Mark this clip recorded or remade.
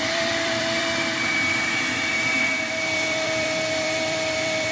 remade